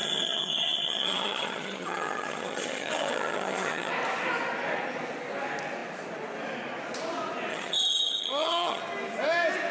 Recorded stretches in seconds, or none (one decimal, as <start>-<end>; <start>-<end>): 3.9-7.5; 8.8-9.7